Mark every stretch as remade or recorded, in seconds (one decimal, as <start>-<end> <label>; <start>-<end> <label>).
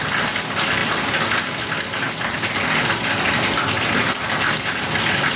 0.0-5.4 recorded